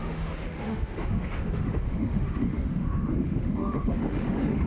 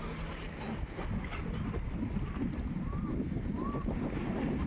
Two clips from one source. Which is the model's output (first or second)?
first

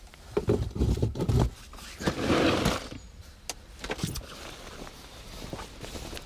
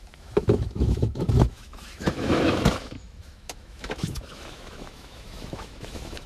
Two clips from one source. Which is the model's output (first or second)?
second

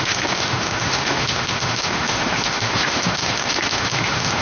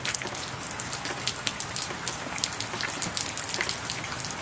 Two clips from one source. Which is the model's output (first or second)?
first